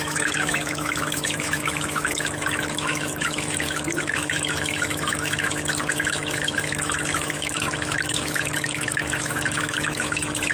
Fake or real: fake